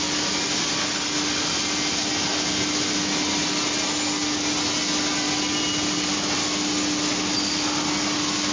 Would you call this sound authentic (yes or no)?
yes